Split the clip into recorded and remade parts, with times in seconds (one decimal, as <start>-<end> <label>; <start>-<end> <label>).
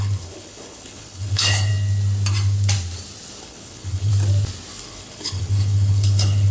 0.0-1.7 remade; 1.7-3.4 recorded; 3.4-4.1 remade; 4.1-4.8 recorded; 4.8-6.5 remade